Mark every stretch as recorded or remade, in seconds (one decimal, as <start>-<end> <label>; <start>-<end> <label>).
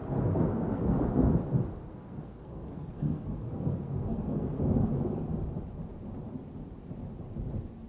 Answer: 0.0-1.0 remade; 1.0-1.9 recorded; 1.9-4.6 remade; 4.6-7.9 recorded